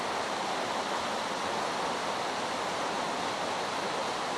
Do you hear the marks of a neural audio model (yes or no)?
no